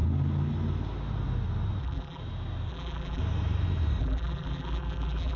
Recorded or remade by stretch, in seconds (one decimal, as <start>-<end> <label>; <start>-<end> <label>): 0.0-1.8 recorded; 1.8-2.2 remade; 2.2-2.7 recorded; 2.7-3.2 remade; 3.2-4.0 recorded; 4.0-5.4 remade